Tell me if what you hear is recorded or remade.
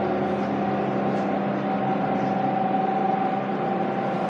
recorded